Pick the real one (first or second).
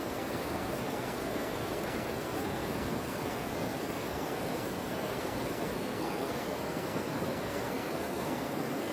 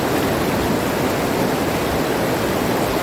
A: second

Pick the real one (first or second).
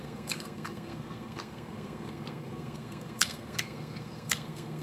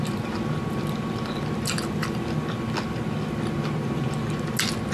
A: second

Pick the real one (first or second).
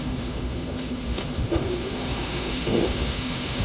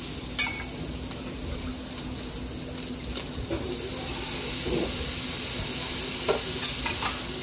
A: second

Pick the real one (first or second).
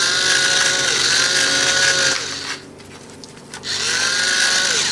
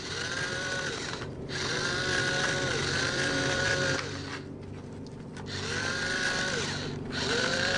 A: first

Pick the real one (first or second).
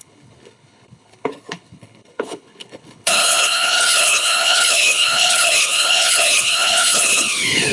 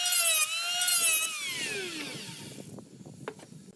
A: second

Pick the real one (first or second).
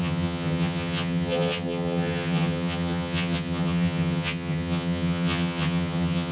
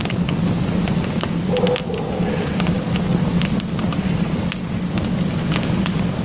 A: second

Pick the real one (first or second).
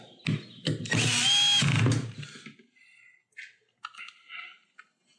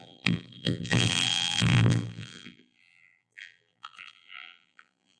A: first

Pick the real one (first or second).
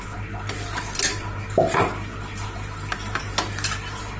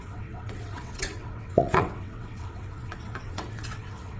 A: first